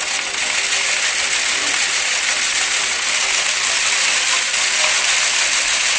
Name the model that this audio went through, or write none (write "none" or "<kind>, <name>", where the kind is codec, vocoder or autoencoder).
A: none